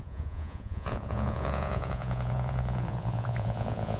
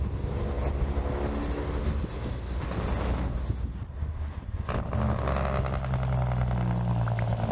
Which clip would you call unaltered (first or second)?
second